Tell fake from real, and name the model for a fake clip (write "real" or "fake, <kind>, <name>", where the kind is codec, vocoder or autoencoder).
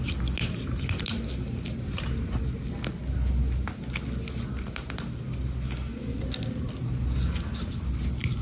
real